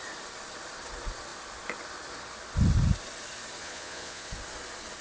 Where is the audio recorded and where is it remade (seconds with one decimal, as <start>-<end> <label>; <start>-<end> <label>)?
0.0-3.6 recorded; 3.6-4.3 remade; 4.3-5.0 recorded